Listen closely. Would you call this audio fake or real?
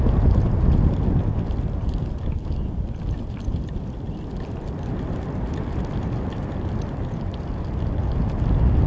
real